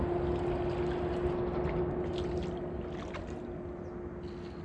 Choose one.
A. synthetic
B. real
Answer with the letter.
B